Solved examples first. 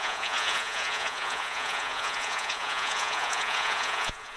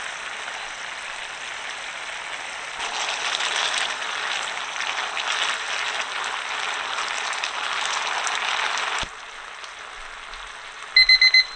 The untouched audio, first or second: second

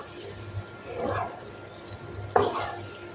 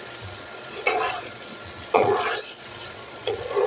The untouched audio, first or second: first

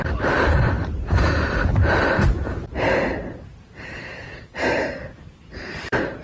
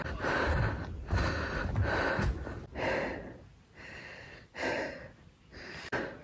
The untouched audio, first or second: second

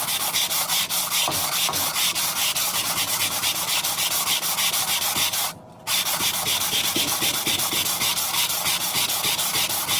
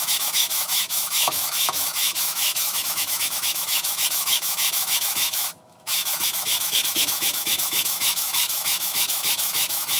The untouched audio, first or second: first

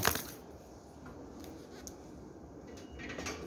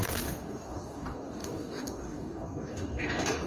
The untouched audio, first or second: first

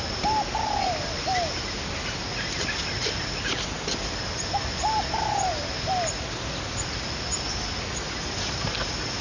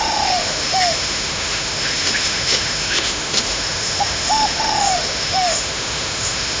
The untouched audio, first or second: first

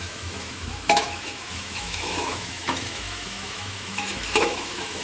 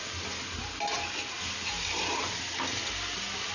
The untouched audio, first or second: second